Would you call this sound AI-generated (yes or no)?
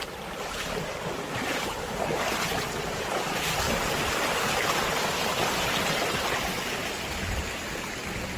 no